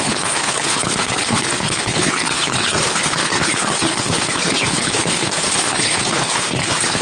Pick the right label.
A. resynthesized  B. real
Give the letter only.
A